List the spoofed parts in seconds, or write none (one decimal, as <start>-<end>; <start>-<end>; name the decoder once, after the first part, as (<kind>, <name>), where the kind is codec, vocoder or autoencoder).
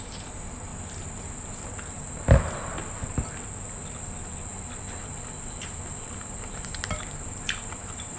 0.0-0.7 (vocoder, BigVGAN v2); 5.5-8.2